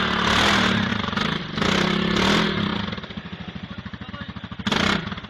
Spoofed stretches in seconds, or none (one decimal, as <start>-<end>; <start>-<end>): none